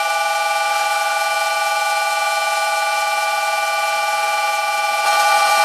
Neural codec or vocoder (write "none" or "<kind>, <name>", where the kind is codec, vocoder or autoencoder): none